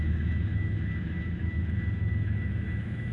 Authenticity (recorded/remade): remade